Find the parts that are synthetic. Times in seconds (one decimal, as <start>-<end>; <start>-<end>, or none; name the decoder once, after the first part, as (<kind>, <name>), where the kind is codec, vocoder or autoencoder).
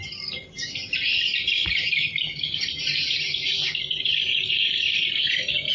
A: 0.4-1.2 (vocoder, BigVGAN v2); 2.0-5.7